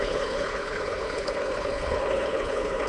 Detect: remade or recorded remade